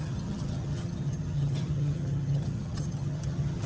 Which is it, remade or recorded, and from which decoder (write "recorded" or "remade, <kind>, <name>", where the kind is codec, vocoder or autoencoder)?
remade, vocoder, HiFi-GAN